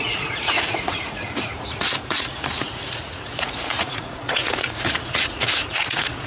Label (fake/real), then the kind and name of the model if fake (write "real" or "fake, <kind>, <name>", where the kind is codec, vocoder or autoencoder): fake, vocoder, Vocos